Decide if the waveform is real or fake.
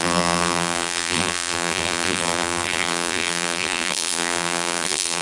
fake